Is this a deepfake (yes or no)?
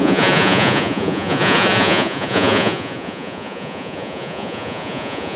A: yes